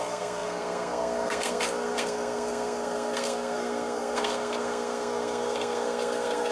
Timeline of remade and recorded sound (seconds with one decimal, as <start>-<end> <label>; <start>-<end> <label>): 0.0-6.5 remade